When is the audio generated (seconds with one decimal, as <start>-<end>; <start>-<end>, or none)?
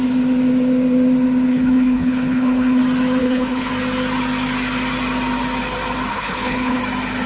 1.5-2.8; 3.2-3.7; 6.1-6.8